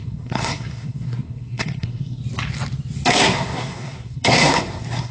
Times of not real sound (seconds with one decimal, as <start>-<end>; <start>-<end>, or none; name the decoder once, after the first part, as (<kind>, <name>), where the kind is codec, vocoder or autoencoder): 0.0-2.2 (codec, SNAC); 3.1-5.1

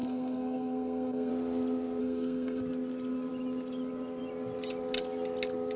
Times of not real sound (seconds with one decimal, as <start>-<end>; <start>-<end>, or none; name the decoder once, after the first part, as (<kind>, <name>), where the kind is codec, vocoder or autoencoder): 0.0-1.3 (codec, SNAC); 2.0-2.6

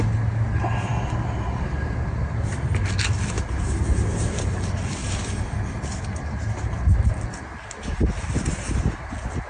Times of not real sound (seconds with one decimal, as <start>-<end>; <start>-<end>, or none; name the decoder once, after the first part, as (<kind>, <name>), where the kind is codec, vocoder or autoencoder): none

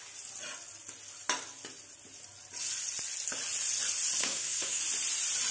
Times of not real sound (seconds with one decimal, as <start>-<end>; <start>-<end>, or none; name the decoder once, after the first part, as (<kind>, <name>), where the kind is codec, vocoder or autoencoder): 4.2-4.8 (codec, SNAC)